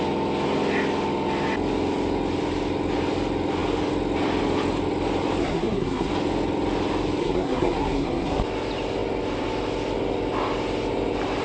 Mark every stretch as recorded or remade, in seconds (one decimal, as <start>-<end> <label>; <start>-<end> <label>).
0.0-5.4 recorded; 5.4-6.1 remade; 6.1-7.2 recorded; 7.2-8.4 remade; 8.4-11.4 recorded